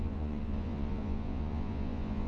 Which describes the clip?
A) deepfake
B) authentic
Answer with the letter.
A